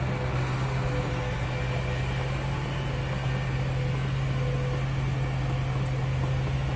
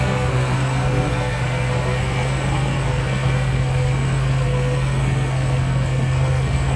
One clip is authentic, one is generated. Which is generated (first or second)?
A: second